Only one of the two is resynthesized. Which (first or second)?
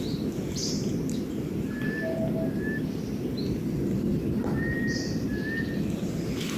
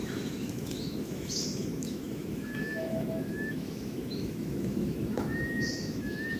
second